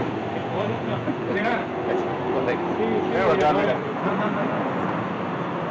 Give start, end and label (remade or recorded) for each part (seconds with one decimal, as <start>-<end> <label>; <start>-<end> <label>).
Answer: 0.0-0.4 recorded; 0.4-2.3 remade; 2.3-3.6 recorded; 3.6-4.9 remade; 4.9-5.7 recorded